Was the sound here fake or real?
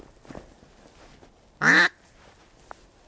real